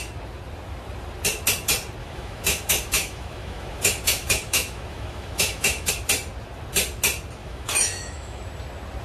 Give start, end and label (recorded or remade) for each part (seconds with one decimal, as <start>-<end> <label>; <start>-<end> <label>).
0.0-2.0 recorded; 2.0-5.9 remade; 5.9-7.4 recorded; 7.4-8.4 remade; 8.4-9.0 recorded